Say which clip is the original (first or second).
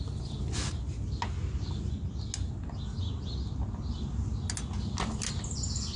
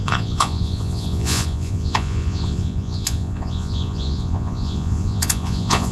first